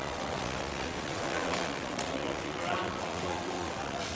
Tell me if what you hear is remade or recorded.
remade